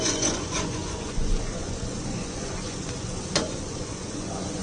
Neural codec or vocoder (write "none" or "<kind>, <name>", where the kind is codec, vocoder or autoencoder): vocoder, Vocos